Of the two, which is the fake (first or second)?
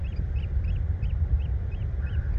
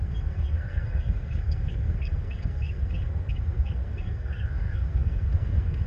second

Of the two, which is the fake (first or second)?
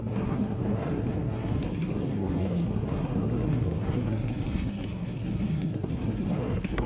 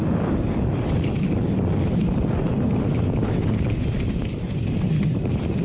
first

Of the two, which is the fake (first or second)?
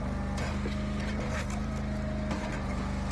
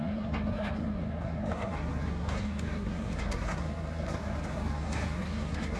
second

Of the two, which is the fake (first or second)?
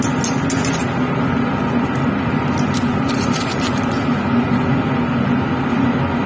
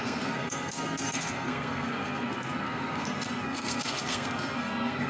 second